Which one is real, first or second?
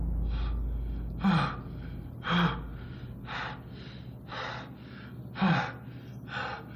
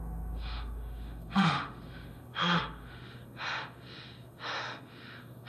first